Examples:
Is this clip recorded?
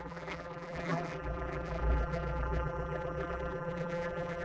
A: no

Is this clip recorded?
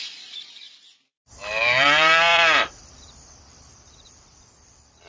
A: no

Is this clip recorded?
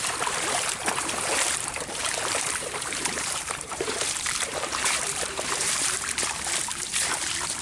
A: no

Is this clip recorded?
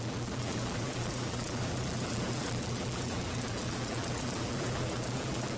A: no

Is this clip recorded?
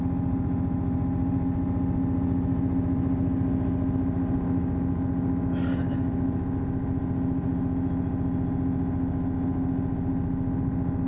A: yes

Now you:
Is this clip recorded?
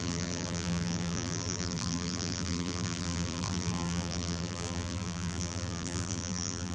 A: no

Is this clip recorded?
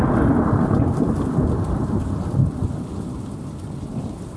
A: no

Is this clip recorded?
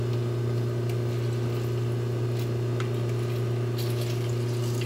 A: yes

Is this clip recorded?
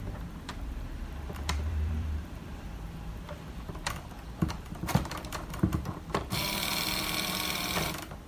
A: no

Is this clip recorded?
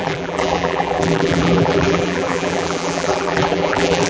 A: no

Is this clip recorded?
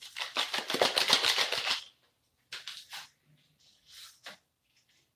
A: yes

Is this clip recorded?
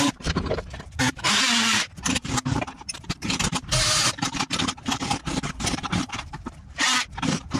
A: no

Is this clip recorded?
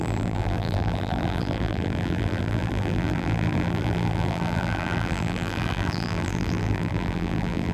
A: no